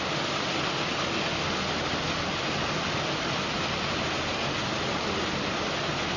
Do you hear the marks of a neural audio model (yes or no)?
no